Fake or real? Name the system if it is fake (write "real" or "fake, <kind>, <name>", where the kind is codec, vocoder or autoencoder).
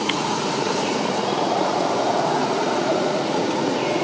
fake, vocoder, Vocos